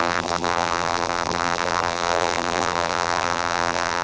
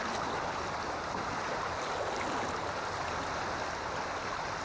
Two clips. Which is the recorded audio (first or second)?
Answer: second